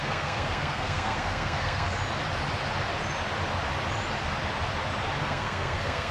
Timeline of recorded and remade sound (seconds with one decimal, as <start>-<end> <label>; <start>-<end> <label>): 0.0-2.0 remade; 2.0-5.2 recorded; 5.2-6.1 remade